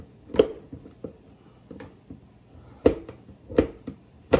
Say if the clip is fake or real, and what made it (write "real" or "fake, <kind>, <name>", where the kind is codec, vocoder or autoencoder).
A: fake, vocoder, BigVGAN v2